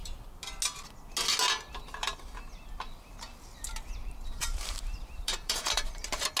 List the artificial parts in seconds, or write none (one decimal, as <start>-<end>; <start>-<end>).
4.4-6.0